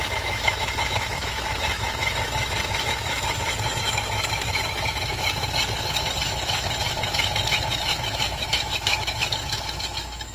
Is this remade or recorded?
remade